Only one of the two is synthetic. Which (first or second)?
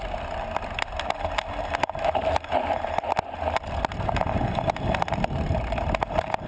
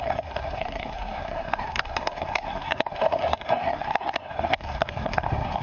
second